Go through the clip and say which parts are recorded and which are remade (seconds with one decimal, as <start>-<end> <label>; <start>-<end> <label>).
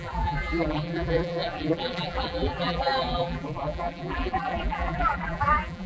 0.0-5.9 remade